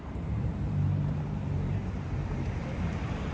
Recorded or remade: remade